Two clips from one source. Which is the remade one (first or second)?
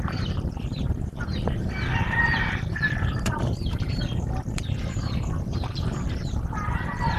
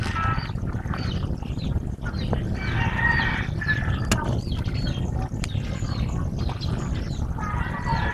first